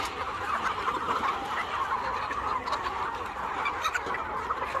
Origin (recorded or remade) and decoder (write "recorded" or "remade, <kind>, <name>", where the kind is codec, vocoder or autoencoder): recorded